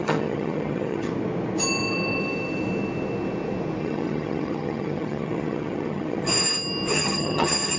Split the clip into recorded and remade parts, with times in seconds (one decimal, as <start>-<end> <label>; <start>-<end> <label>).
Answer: 0.0-1.1 remade; 1.1-3.8 recorded; 3.8-6.3 remade; 6.3-6.9 recorded; 6.9-7.8 remade